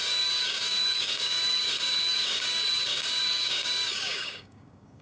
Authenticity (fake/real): fake